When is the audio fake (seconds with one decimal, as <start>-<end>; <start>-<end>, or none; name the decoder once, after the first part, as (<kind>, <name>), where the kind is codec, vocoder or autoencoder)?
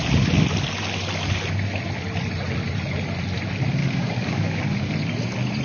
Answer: 3.8-4.9 (codec, DAC)